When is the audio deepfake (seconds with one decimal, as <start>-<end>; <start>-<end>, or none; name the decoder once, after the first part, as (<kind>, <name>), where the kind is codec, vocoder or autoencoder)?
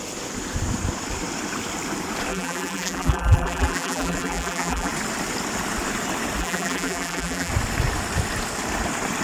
2.3-4.9 (vocoder, BigVGAN v2); 6.4-7.5